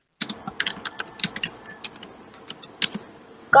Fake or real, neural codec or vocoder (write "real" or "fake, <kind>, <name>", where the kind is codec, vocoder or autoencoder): real